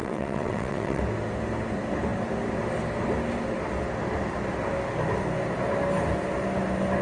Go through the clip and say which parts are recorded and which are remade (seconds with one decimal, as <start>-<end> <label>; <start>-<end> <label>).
0.0-1.0 remade; 1.0-7.0 recorded